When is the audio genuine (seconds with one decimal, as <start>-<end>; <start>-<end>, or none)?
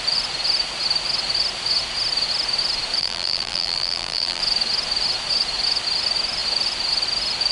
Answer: 0.0-3.0; 4.4-7.5